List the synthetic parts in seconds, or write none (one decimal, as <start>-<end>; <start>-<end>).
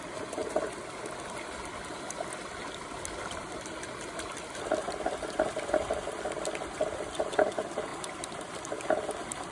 none